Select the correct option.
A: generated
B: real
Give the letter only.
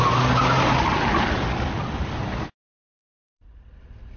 B